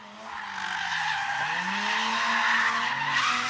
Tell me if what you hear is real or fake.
real